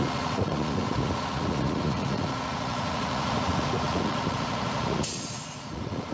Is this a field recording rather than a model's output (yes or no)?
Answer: no